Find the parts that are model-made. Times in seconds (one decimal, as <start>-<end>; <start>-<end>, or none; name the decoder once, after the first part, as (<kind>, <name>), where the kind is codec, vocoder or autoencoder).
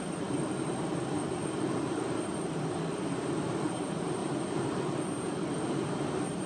0.0-4.2 (vocoder, BigVGAN v2); 5.4-6.5